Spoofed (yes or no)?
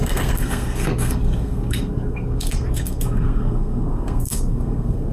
yes